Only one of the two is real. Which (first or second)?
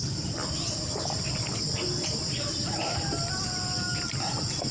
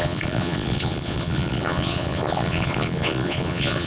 first